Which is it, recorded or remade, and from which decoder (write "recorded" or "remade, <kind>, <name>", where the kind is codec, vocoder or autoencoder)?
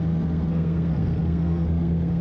remade, codec, SNAC